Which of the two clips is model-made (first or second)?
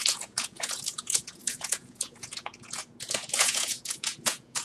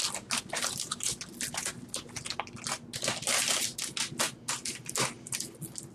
first